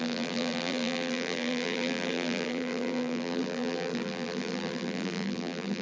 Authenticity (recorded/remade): remade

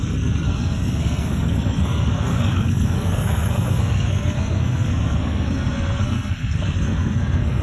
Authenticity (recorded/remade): remade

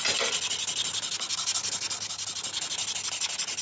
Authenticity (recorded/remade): recorded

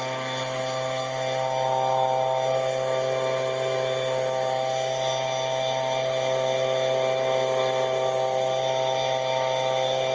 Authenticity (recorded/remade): recorded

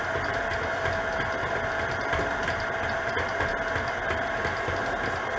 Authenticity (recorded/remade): recorded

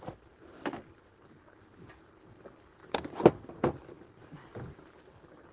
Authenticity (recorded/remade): recorded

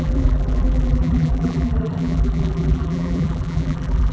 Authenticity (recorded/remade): remade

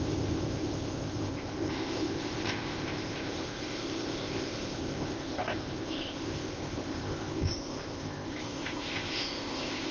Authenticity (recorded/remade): remade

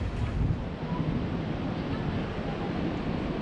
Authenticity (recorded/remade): recorded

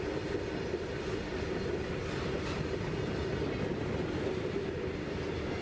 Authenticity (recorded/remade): recorded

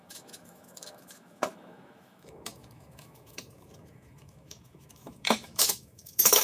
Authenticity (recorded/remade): remade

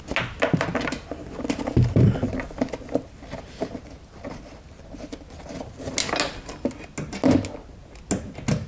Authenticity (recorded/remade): recorded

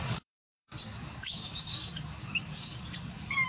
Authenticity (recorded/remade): remade